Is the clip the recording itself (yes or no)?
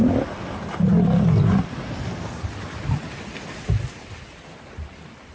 yes